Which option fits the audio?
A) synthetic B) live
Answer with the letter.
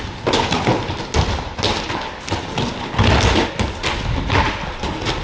B